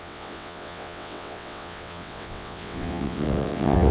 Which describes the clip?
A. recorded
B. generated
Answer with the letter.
B